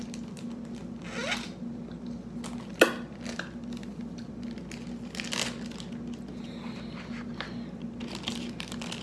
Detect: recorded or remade recorded